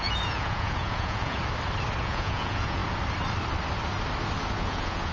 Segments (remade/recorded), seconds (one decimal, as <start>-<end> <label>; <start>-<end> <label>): 0.0-1.4 remade; 1.4-2.0 recorded; 2.0-2.8 remade; 2.8-4.6 recorded; 4.6-5.1 remade